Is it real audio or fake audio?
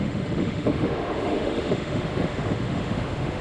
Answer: fake